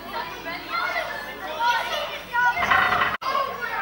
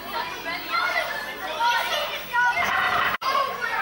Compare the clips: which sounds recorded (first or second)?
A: first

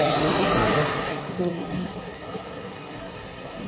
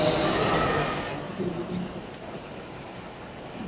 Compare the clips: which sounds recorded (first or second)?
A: second